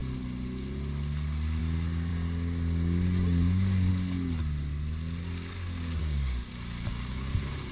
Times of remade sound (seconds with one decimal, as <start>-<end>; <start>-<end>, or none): 6.0-6.5